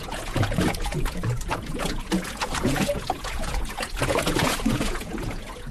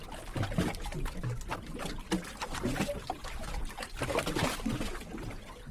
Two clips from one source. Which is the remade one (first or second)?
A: first